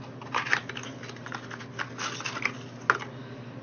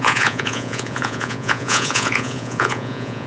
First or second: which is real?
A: first